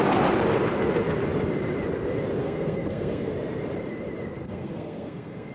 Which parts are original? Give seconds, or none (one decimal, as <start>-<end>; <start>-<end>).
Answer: 0.0-2.4; 3.3-4.4